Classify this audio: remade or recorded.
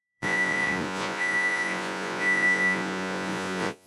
remade